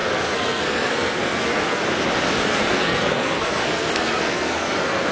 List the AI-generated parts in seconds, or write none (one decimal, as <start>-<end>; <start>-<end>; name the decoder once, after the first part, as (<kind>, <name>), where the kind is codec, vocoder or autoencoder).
0.0-1.8 (codec, SNAC); 2.5-5.1